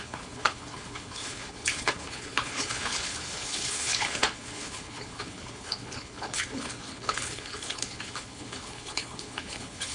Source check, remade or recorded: remade